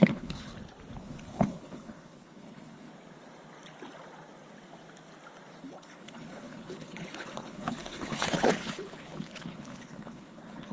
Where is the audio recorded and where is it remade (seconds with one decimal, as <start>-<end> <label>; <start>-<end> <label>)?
0.0-0.5 remade; 0.5-1.0 recorded; 1.0-2.9 remade; 2.9-5.6 recorded; 5.6-10.7 remade